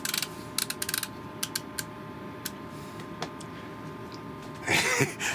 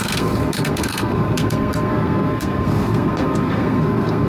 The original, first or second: first